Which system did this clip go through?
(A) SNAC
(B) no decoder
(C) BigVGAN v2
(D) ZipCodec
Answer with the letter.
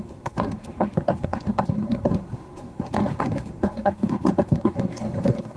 A